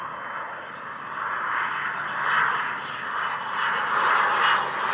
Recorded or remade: recorded